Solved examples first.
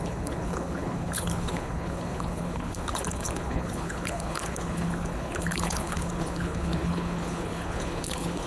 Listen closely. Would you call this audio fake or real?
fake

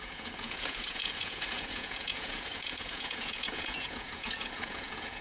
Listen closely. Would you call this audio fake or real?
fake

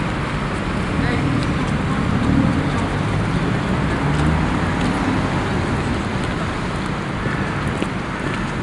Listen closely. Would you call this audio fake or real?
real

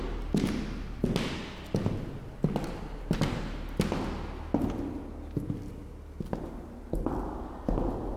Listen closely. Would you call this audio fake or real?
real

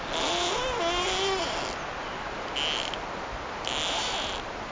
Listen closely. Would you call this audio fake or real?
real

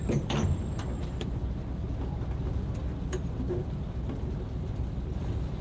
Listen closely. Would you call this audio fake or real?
real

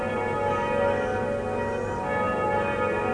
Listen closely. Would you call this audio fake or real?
real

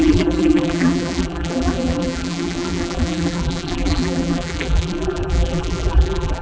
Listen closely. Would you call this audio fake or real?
fake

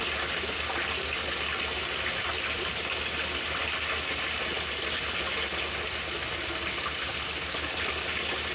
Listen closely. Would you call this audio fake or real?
real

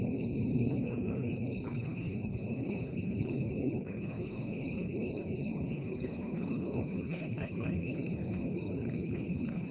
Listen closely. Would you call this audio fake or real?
fake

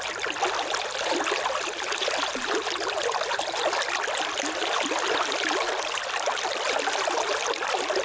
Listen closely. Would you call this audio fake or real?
real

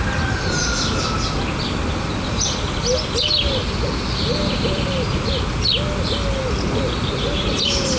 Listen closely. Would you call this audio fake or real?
real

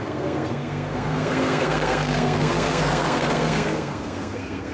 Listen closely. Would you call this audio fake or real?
fake